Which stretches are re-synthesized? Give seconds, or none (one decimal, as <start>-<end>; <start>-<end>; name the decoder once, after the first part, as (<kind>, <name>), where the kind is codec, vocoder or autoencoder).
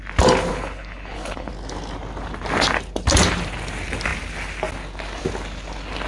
0.5-1.5 (codec, HILCodec)